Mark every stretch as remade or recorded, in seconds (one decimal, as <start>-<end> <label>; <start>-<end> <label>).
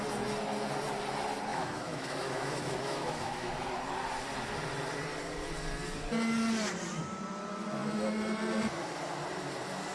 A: 0.0-1.5 recorded; 1.5-3.5 remade; 3.5-9.9 recorded